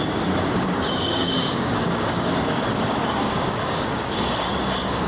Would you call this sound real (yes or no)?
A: no